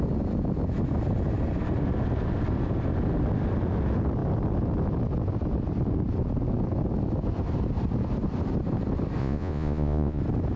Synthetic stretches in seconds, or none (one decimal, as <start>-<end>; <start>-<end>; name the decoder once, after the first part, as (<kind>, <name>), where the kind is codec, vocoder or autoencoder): 9.2-10.2 (vocoder, Vocos)